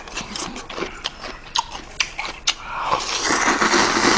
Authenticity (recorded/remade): recorded